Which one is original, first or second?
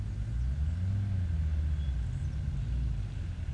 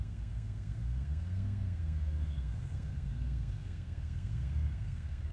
first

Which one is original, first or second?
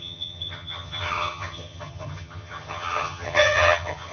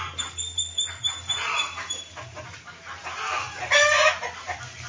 second